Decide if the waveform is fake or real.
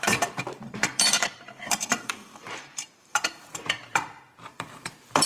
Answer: fake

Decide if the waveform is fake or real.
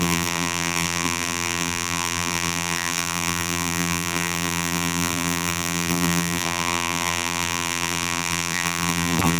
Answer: fake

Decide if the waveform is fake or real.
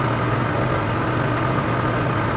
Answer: real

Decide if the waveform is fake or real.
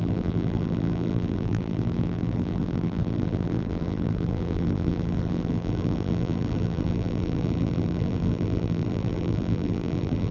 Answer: fake